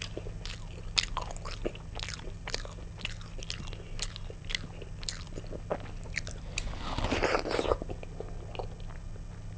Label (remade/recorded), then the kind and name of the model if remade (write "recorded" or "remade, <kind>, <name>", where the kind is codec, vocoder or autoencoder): recorded